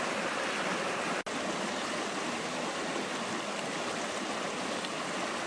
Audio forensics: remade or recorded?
recorded